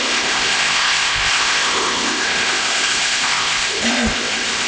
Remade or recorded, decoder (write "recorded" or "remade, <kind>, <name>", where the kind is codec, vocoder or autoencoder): remade, codec, ZipCodec